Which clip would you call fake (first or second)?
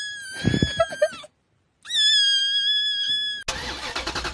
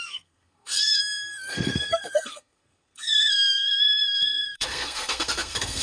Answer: second